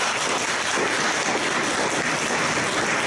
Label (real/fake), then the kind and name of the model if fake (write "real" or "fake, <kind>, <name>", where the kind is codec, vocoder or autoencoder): real